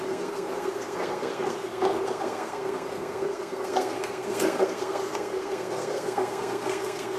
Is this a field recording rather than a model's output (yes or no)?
no